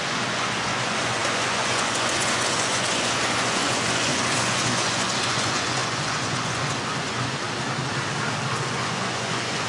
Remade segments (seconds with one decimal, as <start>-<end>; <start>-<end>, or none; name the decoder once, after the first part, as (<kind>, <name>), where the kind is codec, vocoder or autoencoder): 0.0-7.4 (vocoder, Vocos); 8.5-9.7